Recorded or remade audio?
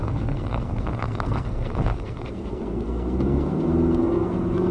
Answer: remade